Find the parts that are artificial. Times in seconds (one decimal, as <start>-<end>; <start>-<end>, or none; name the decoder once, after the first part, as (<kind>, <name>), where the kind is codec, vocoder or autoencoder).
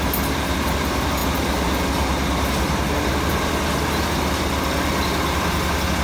none